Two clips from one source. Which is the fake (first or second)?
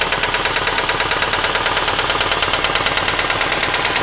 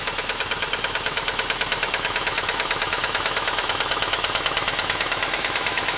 second